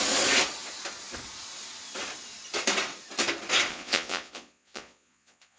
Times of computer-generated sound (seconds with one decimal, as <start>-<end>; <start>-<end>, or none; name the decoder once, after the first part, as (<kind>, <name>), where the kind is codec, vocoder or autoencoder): 3.7-5.6 (vocoder, Vocos)